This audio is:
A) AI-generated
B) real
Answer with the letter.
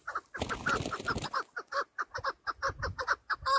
B